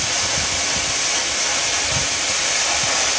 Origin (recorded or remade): recorded